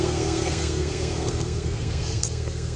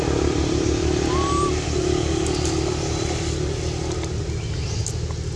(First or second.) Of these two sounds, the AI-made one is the first